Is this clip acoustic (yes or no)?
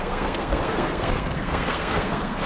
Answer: no